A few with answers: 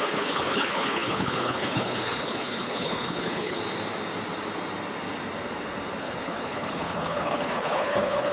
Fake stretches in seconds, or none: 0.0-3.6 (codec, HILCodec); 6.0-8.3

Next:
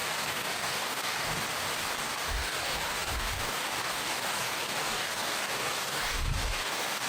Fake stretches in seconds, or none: 0.0-1.4 (codec, DAC); 2.0-7.1

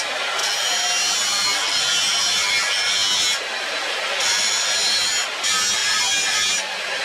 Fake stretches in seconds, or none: none

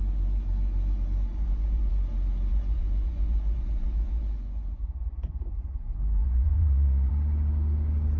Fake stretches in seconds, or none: 1.3-1.9 (vocoder, Vocos); 2.5-7.1

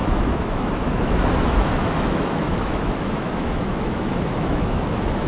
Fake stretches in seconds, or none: 0.0-5.3 (autoencoder, DAC-VAE)

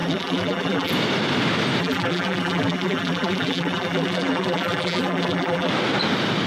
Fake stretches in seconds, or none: 0.0-0.9 (vocoder, BigVGAN v2); 1.8-5.7

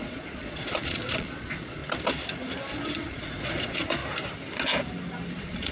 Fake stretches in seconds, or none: 0.0-1.8 (vocoder, Vocos); 2.7-4.0; 5.3-5.7